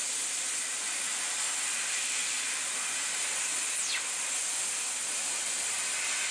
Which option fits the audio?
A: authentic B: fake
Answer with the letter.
A